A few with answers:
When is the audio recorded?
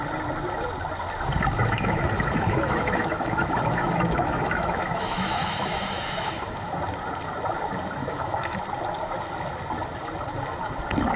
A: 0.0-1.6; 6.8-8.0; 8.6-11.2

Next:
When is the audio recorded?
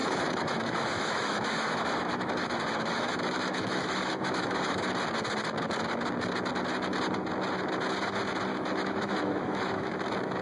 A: 4.8-8.5; 9.9-10.4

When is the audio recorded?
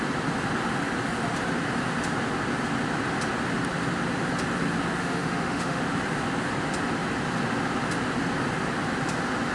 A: 0.0-5.0; 5.8-9.5